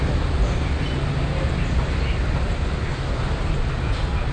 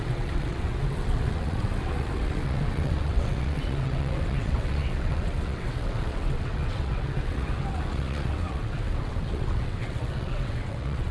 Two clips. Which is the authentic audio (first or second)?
first